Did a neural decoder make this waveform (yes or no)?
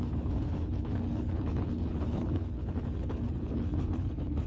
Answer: yes